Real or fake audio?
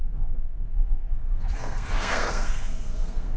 fake